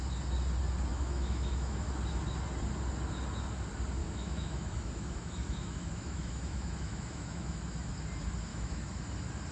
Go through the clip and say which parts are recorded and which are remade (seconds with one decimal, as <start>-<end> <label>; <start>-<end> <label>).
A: 0.0-0.9 recorded; 0.9-1.9 remade; 1.9-4.0 recorded; 4.0-7.6 remade; 7.6-8.5 recorded; 8.5-9.0 remade; 9.0-9.5 recorded